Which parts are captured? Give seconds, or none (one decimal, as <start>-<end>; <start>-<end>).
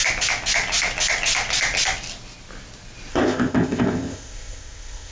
0.0-3.1